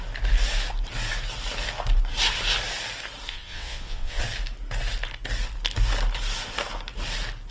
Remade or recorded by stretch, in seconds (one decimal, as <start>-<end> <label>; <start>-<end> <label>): 0.0-3.3 recorded; 3.3-4.2 remade; 4.2-7.5 recorded